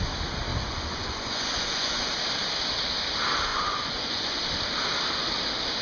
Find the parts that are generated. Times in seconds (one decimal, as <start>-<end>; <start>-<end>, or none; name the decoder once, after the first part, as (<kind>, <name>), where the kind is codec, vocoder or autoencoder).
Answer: 0.5-2.1 (vocoder, Vocos); 3.5-4.4